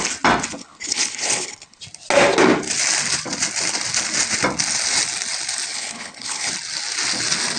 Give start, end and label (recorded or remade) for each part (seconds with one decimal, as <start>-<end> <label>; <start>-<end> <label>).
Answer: 0.0-0.6 recorded; 0.6-1.8 remade; 1.8-5.7 recorded; 5.7-6.5 remade; 6.5-7.6 recorded

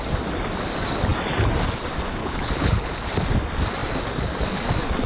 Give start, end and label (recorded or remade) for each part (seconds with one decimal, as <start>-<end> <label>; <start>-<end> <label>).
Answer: 0.0-2.2 recorded; 2.2-2.9 remade; 2.9-5.1 recorded

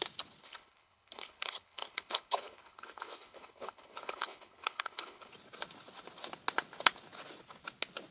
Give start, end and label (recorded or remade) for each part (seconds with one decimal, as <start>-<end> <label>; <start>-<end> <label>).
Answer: 0.0-0.4 recorded; 0.4-5.3 remade; 5.3-8.1 recorded

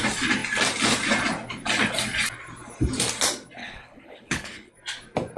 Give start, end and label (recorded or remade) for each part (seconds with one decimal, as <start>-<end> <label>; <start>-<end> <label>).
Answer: 0.0-3.6 recorded; 3.6-4.7 remade; 4.7-5.4 recorded

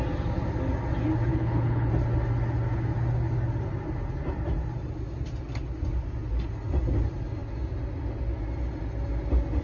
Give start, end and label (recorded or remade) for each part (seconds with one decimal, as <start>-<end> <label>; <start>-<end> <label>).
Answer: 0.0-1.3 recorded; 1.3-1.9 remade; 1.9-9.6 recorded